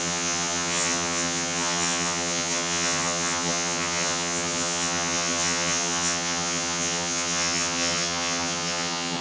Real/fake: fake